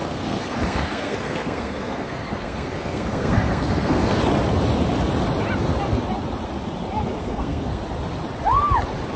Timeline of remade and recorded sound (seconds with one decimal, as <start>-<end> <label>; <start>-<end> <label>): 0.0-4.2 remade; 4.2-7.2 recorded; 7.2-7.8 remade; 7.8-9.2 recorded